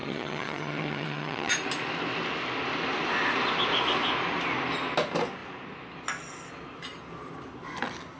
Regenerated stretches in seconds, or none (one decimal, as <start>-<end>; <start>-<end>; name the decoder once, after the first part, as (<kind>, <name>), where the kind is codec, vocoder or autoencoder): 0.0-1.5 (vocoder, HiFi-GAN)